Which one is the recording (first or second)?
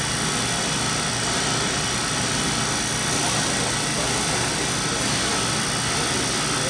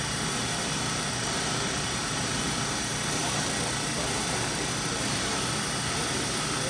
first